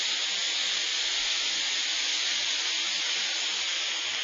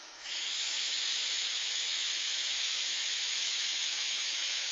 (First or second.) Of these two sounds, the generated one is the second